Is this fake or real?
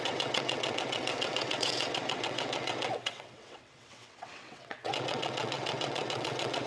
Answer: fake